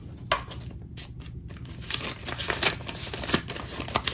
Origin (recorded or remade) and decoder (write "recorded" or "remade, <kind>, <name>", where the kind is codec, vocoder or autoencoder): recorded